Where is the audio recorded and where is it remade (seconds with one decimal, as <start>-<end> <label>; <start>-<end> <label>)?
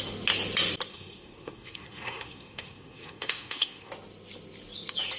0.0-0.9 recorded; 0.9-3.9 remade; 3.9-5.2 recorded